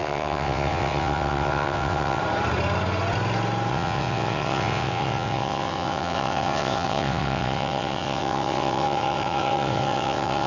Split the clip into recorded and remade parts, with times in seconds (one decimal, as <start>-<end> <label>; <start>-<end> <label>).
0.0-2.2 remade; 2.2-3.7 recorded; 3.7-10.5 remade